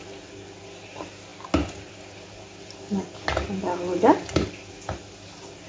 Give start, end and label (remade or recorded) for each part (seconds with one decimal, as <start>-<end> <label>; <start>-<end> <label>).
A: 0.0-5.7 recorded